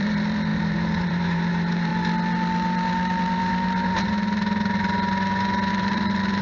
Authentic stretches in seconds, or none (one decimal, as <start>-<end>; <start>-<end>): 1.9-5.7